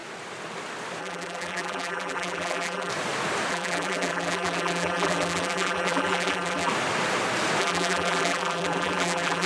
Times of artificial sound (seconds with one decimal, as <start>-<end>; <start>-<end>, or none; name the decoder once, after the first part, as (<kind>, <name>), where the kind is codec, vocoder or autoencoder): 1.0-2.9 (vocoder, BigVGAN v2); 3.5-6.7; 7.6-9.5

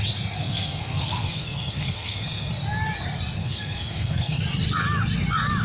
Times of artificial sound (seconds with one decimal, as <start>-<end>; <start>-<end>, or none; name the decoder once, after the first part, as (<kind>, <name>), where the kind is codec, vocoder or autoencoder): 0.4-2.5 (codec, SNAC); 3.4-4.4

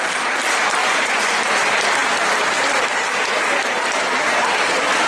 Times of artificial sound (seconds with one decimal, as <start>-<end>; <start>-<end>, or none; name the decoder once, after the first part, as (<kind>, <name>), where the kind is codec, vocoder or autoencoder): 0.8-1.4 (vocoder, Vocos)